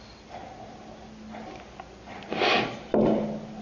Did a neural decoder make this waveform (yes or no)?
no